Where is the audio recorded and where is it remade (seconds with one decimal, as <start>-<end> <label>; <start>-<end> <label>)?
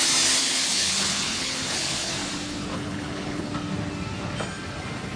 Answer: 0.0-0.4 recorded; 0.4-2.1 remade; 2.1-2.7 recorded; 2.7-3.5 remade; 3.5-5.2 recorded